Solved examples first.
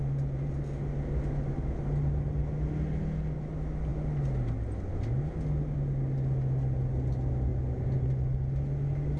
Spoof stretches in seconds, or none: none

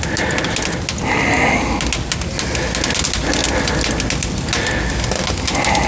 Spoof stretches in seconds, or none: none

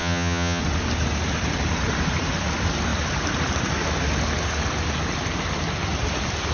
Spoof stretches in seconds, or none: 0.0-0.6 (vocoder, HiFi-GAN)

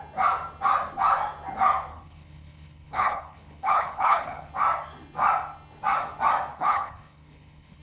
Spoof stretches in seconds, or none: 1.9-4.5 (codec, HILCodec); 6.5-7.8

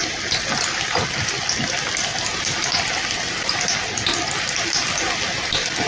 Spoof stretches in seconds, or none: none

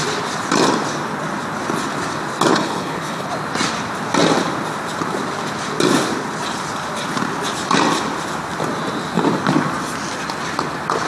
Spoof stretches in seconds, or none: 2.5-3.3 (codec, HILCodec)

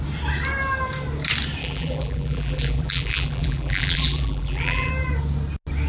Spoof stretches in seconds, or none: 1.6-4.9 (vocoder, BigVGAN v2)